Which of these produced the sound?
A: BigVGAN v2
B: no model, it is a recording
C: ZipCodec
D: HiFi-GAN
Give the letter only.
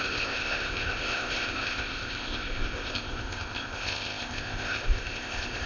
C